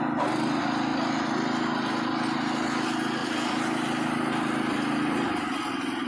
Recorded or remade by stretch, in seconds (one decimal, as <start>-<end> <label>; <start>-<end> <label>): 0.0-6.1 recorded